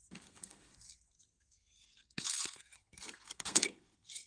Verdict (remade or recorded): remade